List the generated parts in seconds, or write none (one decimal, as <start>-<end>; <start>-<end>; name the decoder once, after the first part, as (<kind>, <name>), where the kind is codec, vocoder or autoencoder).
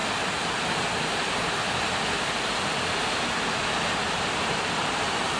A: none